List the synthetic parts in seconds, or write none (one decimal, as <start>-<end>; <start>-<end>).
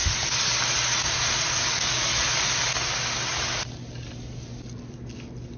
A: 1.5-2.1